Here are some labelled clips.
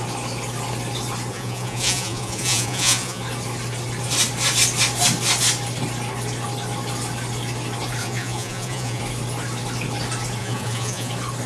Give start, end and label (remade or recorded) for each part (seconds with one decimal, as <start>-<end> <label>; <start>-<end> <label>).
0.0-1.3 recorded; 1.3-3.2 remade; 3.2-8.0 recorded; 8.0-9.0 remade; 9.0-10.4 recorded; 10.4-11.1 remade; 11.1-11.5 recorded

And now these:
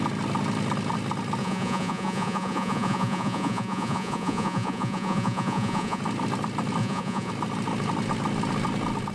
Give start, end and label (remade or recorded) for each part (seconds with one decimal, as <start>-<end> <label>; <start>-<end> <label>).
0.0-1.4 recorded; 1.4-6.0 remade; 6.0-6.8 recorded; 6.8-7.3 remade; 7.3-9.1 recorded

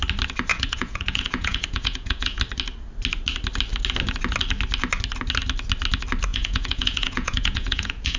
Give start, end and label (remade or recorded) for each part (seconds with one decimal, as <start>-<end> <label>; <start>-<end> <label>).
0.0-0.5 recorded; 0.5-2.4 remade; 2.4-6.3 recorded; 6.3-8.2 remade

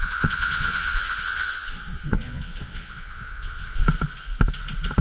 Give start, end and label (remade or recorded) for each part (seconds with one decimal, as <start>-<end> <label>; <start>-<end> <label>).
0.0-3.8 remade; 3.8-5.0 recorded

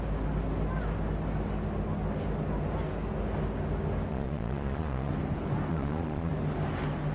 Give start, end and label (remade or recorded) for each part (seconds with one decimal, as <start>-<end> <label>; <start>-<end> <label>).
0.0-4.1 recorded; 4.1-5.1 remade; 5.1-5.7 recorded; 5.7-6.3 remade; 6.3-7.1 recorded